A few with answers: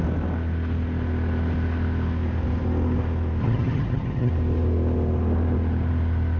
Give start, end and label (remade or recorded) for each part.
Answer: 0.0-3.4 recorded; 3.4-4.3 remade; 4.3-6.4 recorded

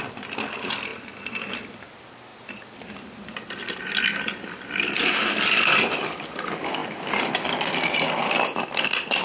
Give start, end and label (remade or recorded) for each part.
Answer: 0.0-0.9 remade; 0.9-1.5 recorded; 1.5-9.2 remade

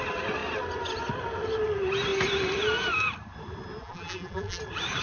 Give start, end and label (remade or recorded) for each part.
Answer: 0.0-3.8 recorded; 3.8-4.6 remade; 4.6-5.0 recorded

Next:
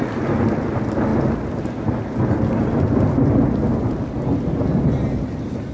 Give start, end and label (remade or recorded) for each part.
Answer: 0.0-5.7 recorded

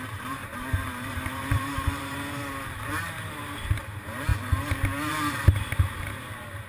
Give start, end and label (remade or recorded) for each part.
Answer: 0.0-4.3 remade; 4.3-5.1 recorded; 5.1-6.7 remade